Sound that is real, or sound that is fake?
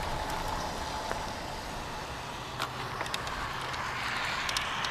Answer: real